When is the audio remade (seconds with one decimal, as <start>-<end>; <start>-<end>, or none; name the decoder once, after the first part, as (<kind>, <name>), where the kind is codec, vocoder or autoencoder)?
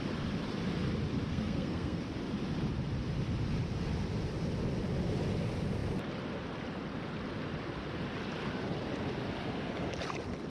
1.3-2.0 (codec, SNAC)